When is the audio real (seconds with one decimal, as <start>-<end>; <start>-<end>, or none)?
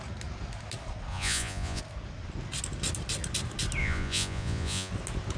0.0-1.1; 1.8-3.8; 4.9-5.4